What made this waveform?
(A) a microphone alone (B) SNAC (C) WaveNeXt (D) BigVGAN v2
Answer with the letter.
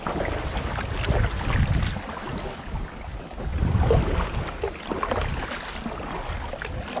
A